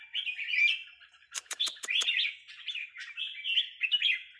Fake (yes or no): yes